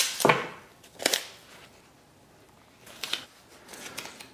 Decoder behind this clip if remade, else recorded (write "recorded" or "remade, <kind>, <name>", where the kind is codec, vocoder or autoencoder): recorded